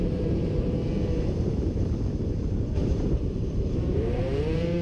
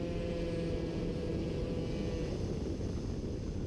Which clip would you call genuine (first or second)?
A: second